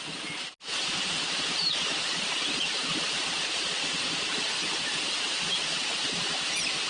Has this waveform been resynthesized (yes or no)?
no